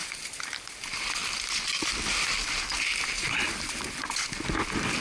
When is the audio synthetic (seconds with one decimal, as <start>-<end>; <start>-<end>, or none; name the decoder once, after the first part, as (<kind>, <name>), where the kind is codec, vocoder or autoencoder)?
0.0-0.6 (vocoder, BigVGAN v2)